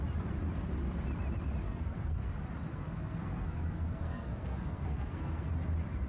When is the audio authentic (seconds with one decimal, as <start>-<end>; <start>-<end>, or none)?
0.0-1.6; 2.3-2.7; 5.5-6.1